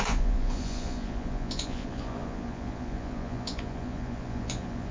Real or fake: fake